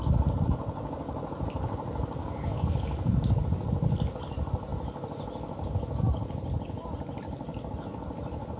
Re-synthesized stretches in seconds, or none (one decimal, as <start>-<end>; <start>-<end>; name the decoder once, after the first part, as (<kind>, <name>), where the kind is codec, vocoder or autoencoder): 2.2-3.4 (codec, DAC)